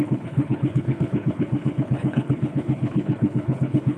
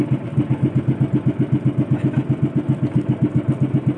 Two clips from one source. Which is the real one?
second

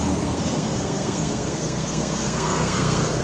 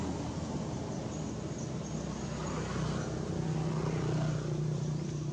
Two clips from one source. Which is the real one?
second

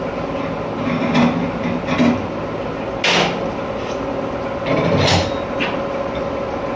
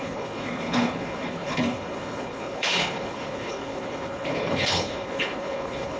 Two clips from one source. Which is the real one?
first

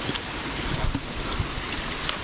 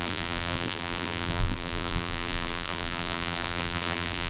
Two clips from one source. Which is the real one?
first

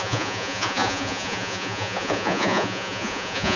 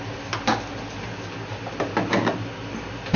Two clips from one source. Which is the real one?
second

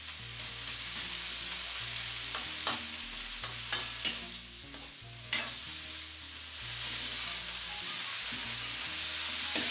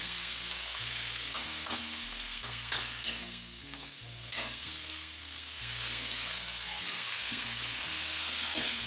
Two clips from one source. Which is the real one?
first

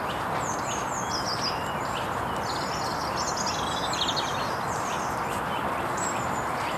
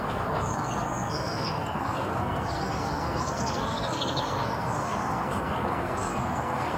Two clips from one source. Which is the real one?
first